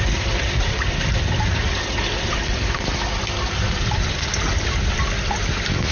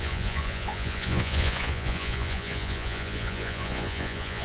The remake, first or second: second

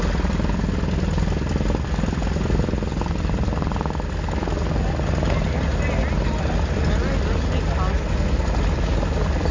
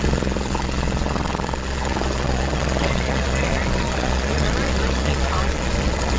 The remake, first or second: second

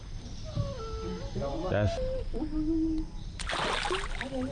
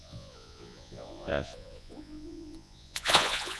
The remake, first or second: second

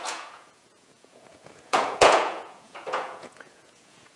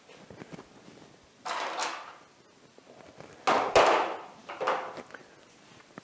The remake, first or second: first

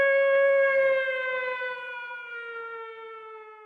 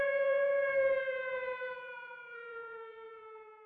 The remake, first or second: second